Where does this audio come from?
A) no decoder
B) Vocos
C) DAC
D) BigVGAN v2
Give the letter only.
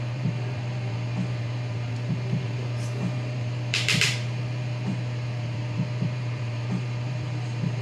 D